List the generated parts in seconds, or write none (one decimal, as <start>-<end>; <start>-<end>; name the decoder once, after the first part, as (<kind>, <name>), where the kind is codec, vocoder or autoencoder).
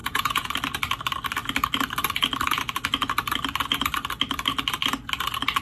0.0-0.5 (vocoder, Vocos)